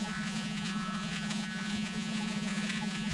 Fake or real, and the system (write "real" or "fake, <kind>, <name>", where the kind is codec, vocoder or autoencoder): fake, vocoder, Vocos